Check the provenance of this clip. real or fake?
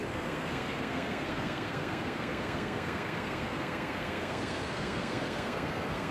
fake